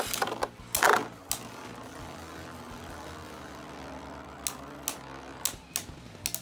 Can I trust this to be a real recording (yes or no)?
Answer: yes